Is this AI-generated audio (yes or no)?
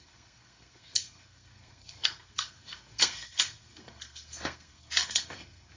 yes